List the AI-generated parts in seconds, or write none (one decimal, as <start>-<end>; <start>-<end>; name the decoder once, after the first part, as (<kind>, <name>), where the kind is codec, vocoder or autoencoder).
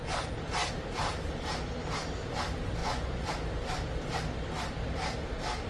2.8-3.3 (vocoder, Vocos)